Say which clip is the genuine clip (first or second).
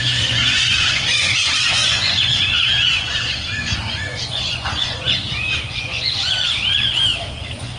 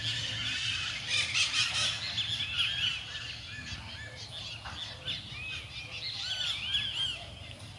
second